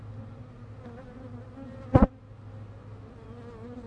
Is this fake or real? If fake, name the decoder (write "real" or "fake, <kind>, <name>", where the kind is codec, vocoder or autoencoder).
real